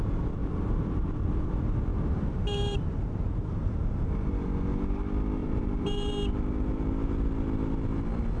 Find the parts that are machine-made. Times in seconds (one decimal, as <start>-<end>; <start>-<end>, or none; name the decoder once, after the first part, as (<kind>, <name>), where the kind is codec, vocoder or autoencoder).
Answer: 0.4-1.1 (vocoder, BigVGAN v2); 1.9-4.3; 5.4-6.1